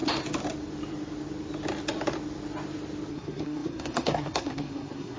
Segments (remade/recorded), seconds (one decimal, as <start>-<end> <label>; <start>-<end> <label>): 0.0-3.1 recorded; 3.1-5.2 remade